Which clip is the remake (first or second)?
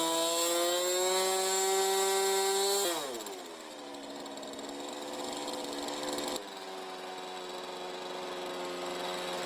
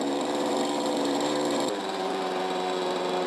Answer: second